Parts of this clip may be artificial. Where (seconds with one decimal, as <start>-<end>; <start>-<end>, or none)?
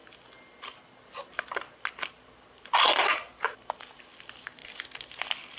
none